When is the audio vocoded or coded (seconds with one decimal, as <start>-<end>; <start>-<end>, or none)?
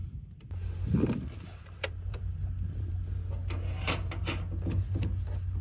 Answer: 0.0-2.9